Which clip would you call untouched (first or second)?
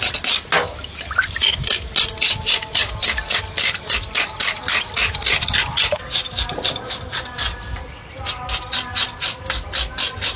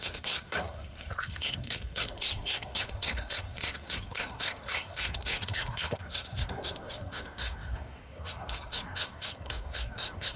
first